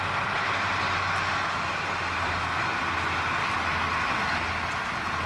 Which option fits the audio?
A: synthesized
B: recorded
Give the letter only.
B